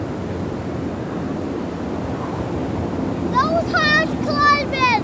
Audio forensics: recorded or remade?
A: recorded